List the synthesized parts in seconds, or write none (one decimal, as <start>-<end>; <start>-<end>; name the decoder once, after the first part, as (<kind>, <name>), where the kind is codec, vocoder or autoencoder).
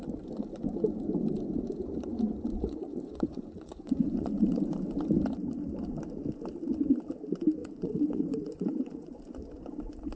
2.6-4.6 (vocoder, Vocos); 7.6-9.2